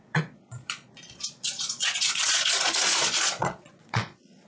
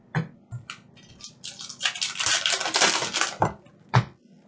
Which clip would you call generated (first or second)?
first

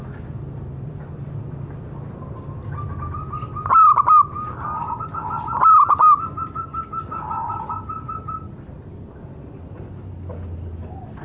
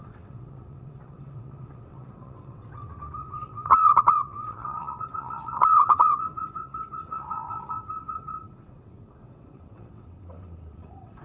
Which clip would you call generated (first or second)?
second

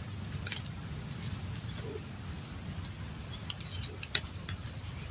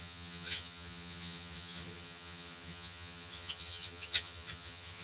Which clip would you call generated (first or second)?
second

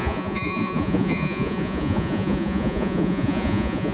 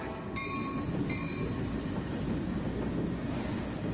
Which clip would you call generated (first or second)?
first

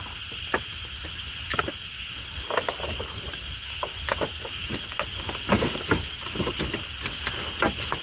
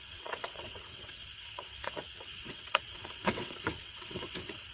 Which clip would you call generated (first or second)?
second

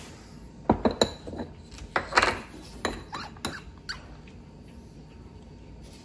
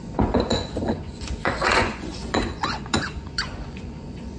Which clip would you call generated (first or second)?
second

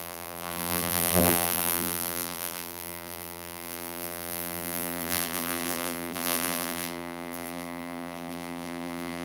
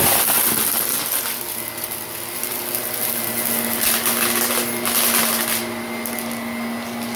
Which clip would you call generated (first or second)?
first